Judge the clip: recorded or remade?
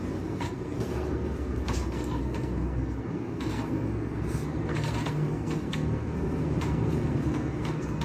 remade